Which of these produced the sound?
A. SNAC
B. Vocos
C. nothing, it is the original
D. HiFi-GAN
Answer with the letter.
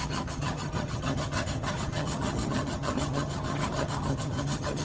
D